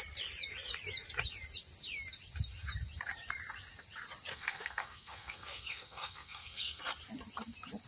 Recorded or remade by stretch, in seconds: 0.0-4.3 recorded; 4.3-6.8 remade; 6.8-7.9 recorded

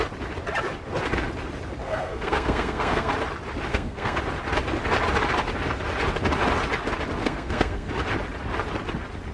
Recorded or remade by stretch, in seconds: 0.0-1.8 recorded; 1.8-3.1 remade; 3.1-3.7 recorded; 3.7-4.2 remade; 4.2-7.2 recorded; 7.2-7.9 remade; 7.9-9.3 recorded

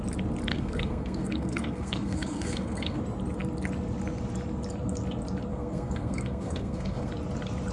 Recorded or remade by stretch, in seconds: 0.0-0.5 recorded; 0.5-3.0 remade; 3.0-5.5 recorded; 5.5-7.1 remade; 7.1-7.7 recorded

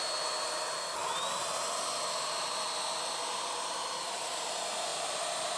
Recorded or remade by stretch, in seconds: 0.0-5.6 recorded

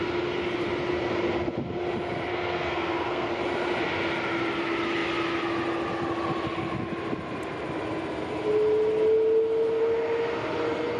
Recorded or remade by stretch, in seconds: 0.0-2.3 recorded; 2.3-3.3 remade; 3.3-11.0 recorded

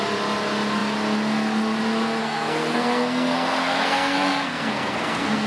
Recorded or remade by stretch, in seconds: 0.0-2.2 recorded; 2.2-5.5 remade